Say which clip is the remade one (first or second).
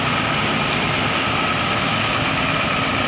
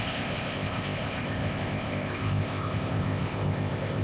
second